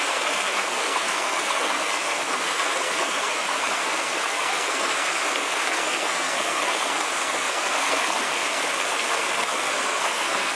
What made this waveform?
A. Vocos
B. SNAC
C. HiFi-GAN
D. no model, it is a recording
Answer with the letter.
B